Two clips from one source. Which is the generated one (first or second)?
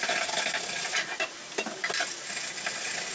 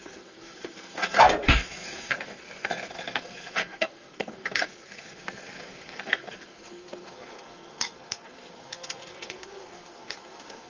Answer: second